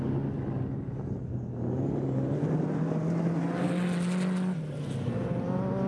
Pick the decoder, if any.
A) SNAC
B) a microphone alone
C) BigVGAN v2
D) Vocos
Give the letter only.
B